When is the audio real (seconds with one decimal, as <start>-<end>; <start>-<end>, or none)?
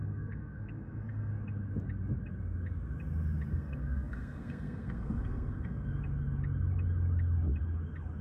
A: 1.3-3.5; 5.9-8.2